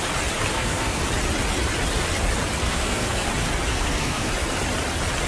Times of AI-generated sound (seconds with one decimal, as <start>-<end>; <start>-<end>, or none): 0.5-1.0; 2.6-3.3; 3.7-4.3